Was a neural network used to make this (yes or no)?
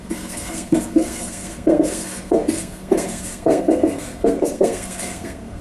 yes